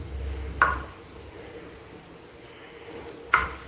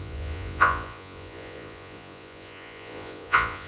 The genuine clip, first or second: first